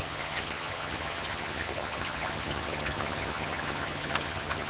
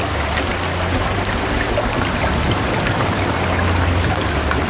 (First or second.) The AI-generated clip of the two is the first